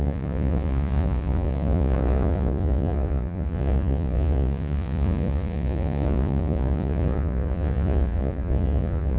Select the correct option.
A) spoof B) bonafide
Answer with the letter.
A